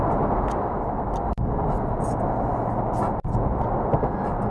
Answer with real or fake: real